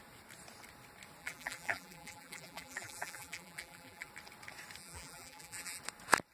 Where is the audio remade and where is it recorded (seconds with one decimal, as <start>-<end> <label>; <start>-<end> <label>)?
0.0-1.2 recorded; 1.2-4.1 remade; 4.1-4.8 recorded; 4.8-5.8 remade; 5.8-6.3 recorded